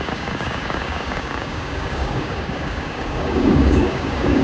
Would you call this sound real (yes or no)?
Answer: no